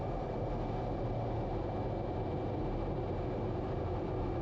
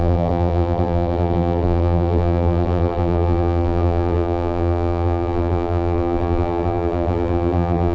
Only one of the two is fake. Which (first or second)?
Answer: second